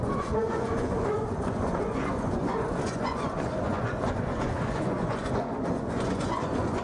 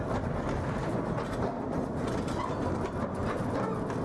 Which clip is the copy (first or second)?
first